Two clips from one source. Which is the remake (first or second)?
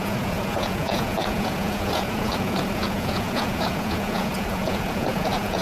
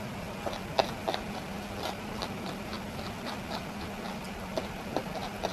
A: first